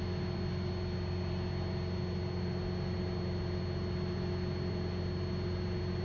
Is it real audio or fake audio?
real